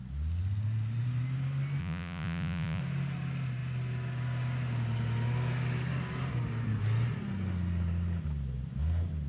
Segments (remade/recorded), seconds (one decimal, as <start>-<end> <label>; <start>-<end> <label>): 0.0-1.8 recorded; 1.8-2.8 remade; 2.8-9.3 recorded